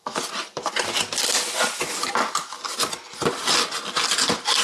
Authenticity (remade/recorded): recorded